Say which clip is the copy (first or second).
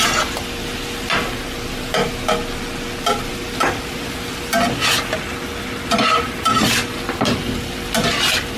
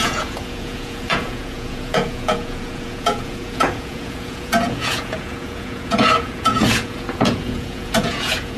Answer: second